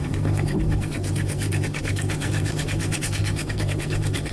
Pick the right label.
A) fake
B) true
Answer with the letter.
A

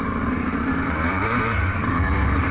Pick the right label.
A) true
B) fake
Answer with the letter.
B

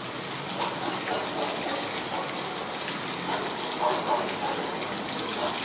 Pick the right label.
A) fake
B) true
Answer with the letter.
B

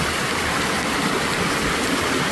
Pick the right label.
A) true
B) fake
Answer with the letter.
B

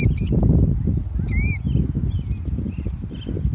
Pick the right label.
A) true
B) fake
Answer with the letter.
A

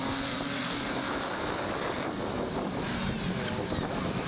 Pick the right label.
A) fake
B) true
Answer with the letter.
B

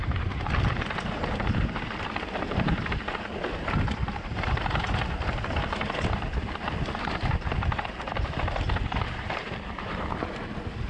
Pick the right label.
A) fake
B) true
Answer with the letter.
A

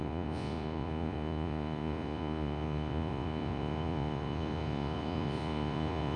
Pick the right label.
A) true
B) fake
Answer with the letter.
B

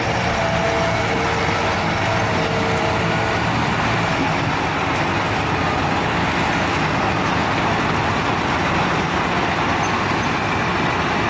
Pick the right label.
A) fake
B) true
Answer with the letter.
B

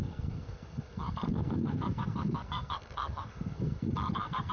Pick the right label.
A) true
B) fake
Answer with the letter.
B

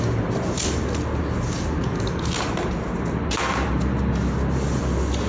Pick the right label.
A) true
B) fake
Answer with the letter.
A